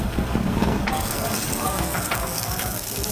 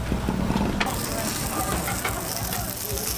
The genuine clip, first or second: second